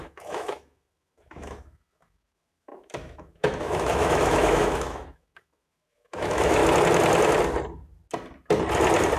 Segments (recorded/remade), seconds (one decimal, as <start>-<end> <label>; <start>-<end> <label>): 0.0-6.6 remade; 6.6-9.2 recorded

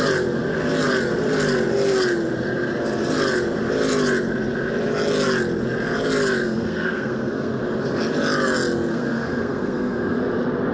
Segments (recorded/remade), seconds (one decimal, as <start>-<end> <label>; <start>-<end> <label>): 0.0-6.4 recorded; 6.4-7.6 remade; 7.6-8.9 recorded; 8.9-10.2 remade; 10.2-10.7 recorded

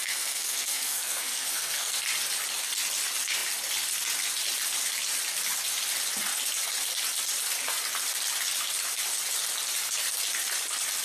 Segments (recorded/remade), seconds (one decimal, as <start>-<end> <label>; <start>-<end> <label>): 0.0-2.0 remade; 2.0-11.0 recorded

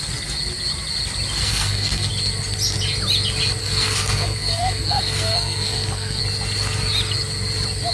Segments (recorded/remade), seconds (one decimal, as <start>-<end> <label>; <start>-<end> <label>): 0.0-1.4 recorded; 1.4-2.1 remade; 2.1-3.6 recorded; 3.6-6.2 remade; 6.2-7.9 recorded

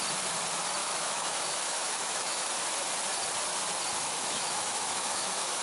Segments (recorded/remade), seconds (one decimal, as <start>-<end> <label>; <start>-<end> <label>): 0.0-0.8 recorded; 0.8-2.5 remade; 2.5-4.0 recorded; 4.0-5.6 remade